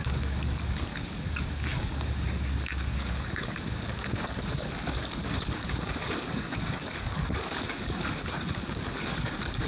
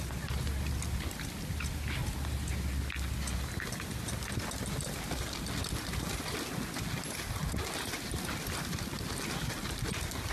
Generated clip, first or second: first